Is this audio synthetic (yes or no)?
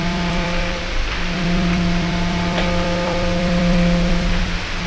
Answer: yes